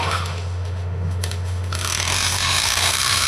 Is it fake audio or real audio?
fake